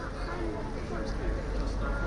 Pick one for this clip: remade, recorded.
recorded